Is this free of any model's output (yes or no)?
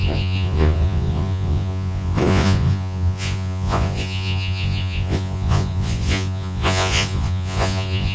no